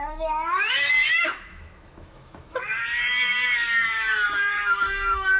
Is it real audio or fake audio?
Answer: fake